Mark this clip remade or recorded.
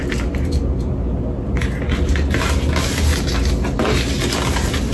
recorded